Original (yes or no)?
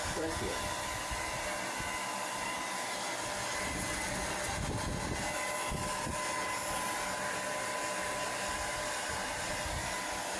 yes